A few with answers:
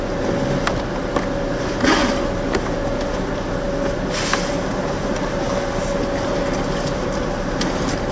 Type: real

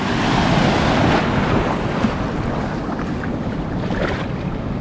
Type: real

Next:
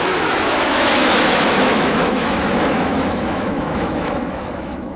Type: fake